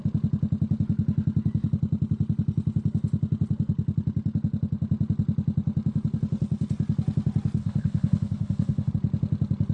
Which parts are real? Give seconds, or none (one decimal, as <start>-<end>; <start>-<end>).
0.0-7.6; 8.9-9.7